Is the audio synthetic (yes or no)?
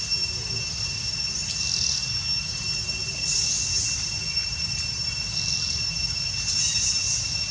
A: no